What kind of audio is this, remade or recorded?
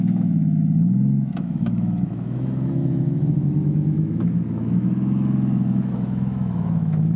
remade